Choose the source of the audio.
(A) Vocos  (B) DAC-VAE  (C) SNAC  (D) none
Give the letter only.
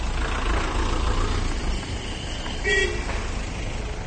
D